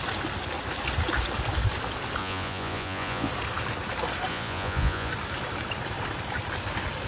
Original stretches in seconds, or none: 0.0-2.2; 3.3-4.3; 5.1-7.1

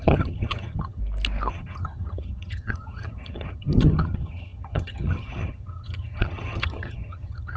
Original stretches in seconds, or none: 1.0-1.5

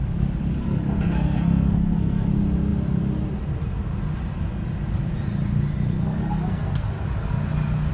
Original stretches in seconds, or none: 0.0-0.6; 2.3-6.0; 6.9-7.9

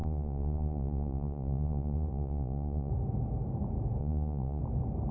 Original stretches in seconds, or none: 2.9-4.0; 4.6-5.1

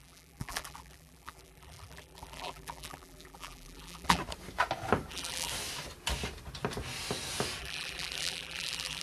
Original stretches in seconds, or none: 4.2-5.1; 5.5-7.6

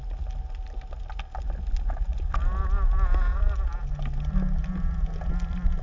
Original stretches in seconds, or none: 0.0-5.8

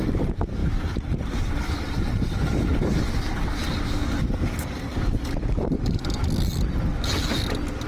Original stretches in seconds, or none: 0.0-7.9

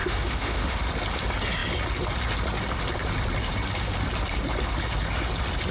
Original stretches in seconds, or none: 0.8-5.7